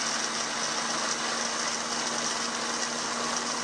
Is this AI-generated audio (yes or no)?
no